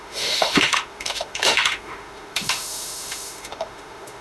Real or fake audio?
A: fake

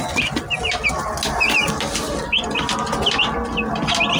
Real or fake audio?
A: real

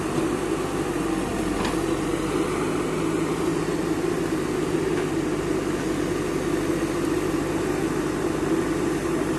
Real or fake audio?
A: real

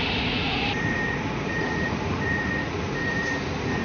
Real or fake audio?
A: fake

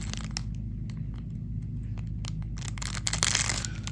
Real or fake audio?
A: real